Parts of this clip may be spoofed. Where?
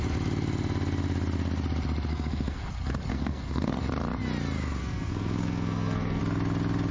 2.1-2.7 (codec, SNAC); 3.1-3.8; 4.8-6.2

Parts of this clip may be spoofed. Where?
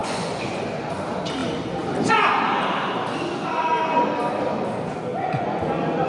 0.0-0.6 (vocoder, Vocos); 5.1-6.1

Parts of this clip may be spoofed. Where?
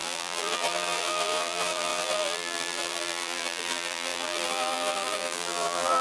0.0-6.0 (vocoder, BigVGAN v2)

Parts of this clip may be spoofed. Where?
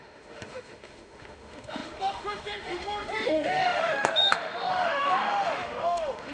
0.0-6.3 (autoencoder, DAC-VAE)